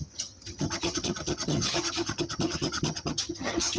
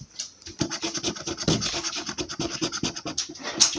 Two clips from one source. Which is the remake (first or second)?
first